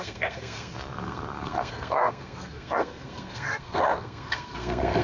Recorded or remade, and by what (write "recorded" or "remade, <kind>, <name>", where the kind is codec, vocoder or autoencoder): remade, codec, SNAC